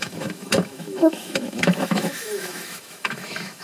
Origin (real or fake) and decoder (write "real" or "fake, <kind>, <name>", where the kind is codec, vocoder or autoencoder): fake, autoencoder, DAC-VAE